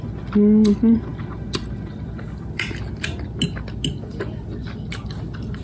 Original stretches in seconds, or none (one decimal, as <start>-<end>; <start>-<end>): 0.0-5.6